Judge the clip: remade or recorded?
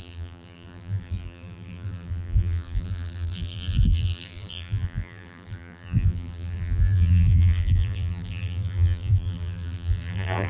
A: remade